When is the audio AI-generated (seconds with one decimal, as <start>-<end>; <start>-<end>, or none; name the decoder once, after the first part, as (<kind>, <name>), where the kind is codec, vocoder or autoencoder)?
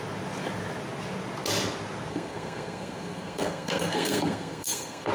2.1-5.1 (codec, SNAC)